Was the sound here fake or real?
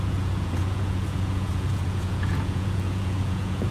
fake